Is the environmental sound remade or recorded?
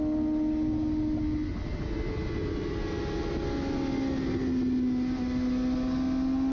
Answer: recorded